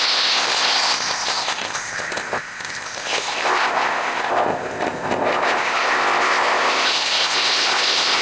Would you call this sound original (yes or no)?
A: no